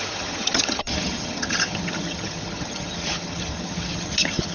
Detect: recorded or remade remade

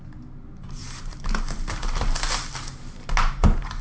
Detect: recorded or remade recorded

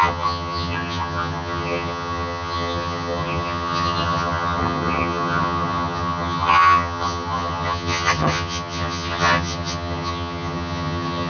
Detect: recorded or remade remade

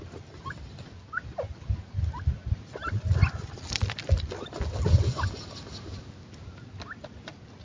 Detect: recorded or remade recorded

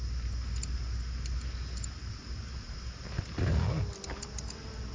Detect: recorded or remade recorded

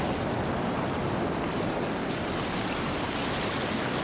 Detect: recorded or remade recorded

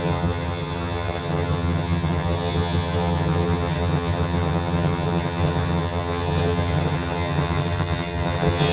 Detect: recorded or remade remade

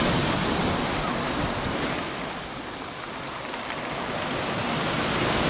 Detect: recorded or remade recorded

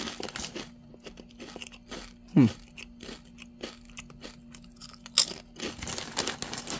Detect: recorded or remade recorded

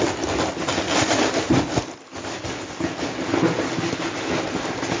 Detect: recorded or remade recorded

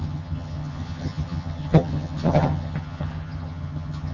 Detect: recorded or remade remade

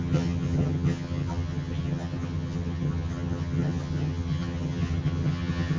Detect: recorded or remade remade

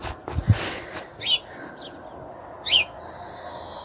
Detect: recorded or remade recorded